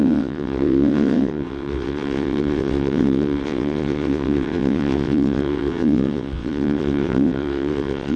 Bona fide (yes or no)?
no